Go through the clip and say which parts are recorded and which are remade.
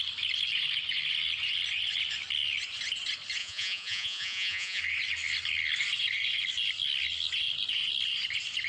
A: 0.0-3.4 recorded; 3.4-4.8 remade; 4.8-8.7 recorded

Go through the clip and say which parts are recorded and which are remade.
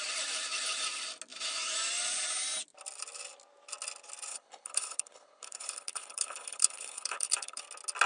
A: 0.0-4.3 recorded; 4.3-7.6 remade; 7.6-8.1 recorded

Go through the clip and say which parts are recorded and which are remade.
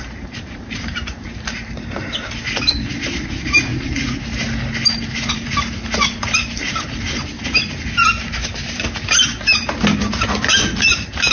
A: 0.0-3.7 remade; 3.7-5.3 recorded; 5.3-9.5 remade; 9.5-10.0 recorded; 10.0-11.3 remade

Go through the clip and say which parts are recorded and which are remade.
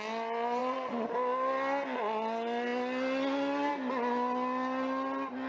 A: 0.0-0.6 recorded; 0.6-1.1 remade; 1.1-5.5 recorded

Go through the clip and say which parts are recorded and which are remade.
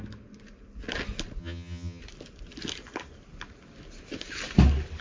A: 0.0-1.4 recorded; 1.4-2.0 remade; 2.0-5.0 recorded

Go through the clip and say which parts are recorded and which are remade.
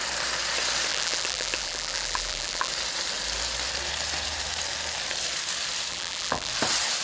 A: 0.0-0.9 recorded; 0.9-2.7 remade; 2.7-5.9 recorded; 5.9-6.5 remade; 6.5-7.0 recorded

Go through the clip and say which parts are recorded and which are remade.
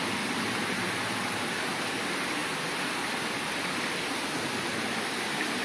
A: 0.0-5.6 recorded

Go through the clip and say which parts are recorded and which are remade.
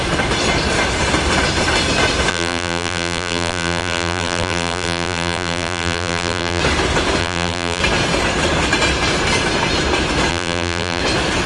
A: 0.0-2.3 recorded; 2.3-6.6 remade; 6.6-7.2 recorded; 7.2-7.8 remade; 7.8-10.3 recorded; 10.3-11.0 remade; 11.0-11.5 recorded